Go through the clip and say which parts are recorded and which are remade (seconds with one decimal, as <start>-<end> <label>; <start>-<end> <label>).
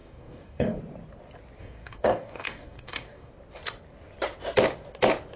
0.0-0.8 remade; 0.8-1.6 recorded; 1.6-3.3 remade; 3.3-5.4 recorded